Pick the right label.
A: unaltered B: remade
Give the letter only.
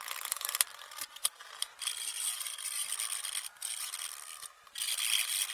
A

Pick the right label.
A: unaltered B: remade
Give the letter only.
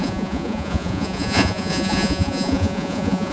B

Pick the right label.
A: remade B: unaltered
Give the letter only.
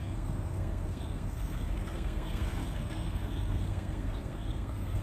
A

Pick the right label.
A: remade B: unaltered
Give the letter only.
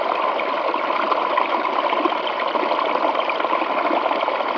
B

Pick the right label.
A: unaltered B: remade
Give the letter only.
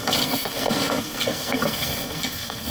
B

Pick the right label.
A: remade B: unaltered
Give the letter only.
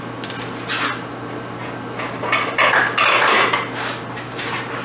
B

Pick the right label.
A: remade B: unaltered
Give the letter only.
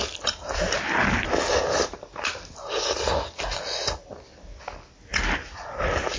B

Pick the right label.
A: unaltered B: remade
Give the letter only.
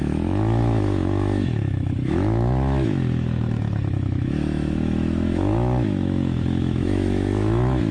B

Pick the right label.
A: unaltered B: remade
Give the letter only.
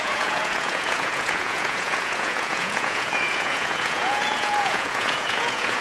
B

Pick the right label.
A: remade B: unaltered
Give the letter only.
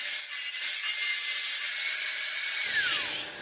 B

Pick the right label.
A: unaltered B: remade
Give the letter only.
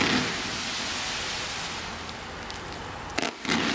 A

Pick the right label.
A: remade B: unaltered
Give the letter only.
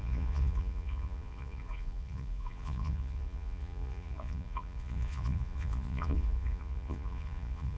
A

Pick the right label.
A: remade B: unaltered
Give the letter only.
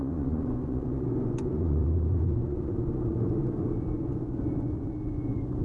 A